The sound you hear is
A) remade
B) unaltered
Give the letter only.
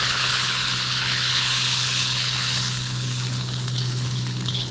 A